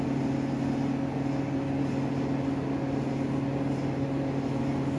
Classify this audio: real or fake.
real